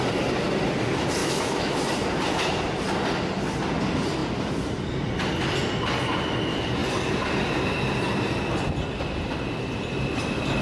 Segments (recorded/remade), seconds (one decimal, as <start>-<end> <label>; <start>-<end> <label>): 0.0-1.2 recorded; 1.2-1.8 remade; 1.8-10.6 recorded